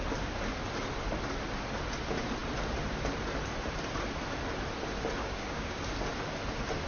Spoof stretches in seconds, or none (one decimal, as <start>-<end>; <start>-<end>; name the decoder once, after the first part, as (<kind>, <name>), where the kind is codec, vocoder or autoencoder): 5.2-5.8 (codec, DAC)